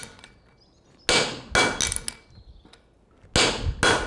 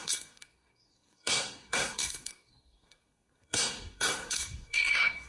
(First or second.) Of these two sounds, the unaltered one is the first